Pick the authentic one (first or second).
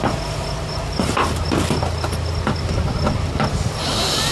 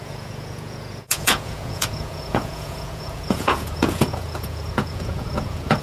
first